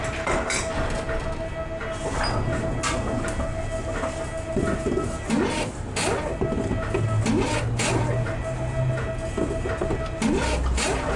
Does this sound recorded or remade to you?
recorded